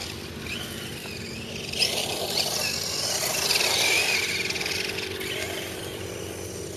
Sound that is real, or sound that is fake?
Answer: real